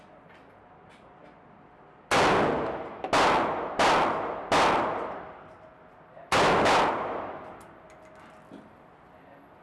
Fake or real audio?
real